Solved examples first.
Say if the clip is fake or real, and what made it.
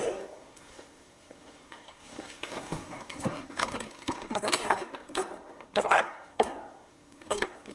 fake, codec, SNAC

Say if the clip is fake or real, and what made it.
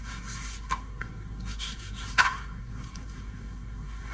fake, codec, SNAC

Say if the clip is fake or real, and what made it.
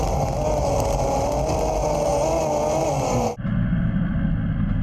real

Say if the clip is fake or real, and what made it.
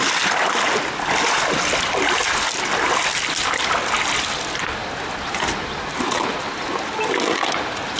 real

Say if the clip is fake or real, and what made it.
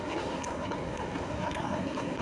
fake, codec, SNAC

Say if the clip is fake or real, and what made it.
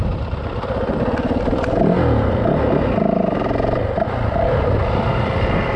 real